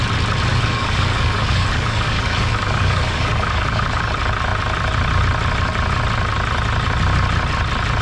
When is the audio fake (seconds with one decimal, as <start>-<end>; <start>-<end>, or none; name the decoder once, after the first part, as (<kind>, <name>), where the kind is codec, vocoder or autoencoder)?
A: 0.5-4.1 (codec, DAC)